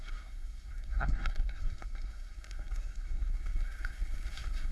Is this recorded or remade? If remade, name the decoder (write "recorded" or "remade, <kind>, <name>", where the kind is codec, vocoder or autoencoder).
remade, codec, SNAC